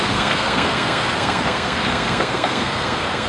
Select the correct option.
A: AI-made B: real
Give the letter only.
A